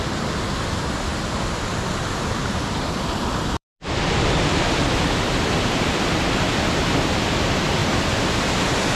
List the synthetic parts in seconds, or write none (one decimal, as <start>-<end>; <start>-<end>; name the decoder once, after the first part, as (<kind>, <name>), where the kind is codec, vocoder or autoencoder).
1.1-1.7 (vocoder, BigVGAN v2); 2.4-6.3